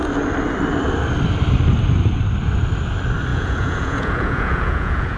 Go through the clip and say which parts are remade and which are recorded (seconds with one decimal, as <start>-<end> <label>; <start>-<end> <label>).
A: 0.0-3.3 recorded; 3.3-5.2 remade